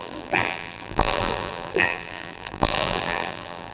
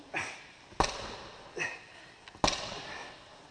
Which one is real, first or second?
second